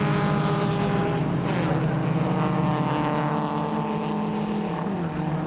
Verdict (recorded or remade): recorded